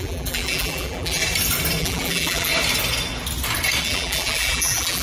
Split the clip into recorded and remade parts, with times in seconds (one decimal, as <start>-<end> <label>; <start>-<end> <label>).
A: 0.0-1.2 remade; 1.2-1.8 recorded; 1.8-2.5 remade; 2.5-3.8 recorded; 3.8-5.0 remade